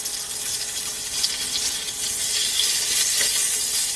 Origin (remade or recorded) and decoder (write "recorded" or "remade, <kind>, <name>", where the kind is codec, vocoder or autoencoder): recorded